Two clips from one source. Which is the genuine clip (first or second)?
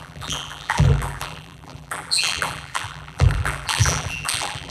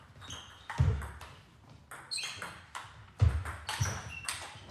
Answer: second